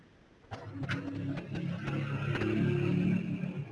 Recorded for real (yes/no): yes